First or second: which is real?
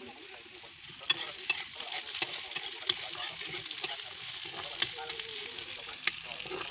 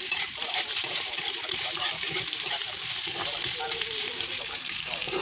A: first